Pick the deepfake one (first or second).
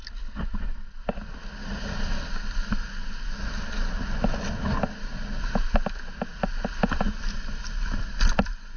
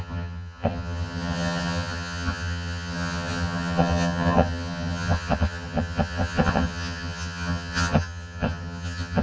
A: second